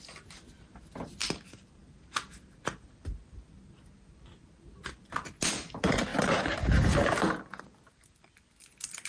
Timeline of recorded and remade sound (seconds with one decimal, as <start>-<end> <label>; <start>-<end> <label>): 0.0-9.1 recorded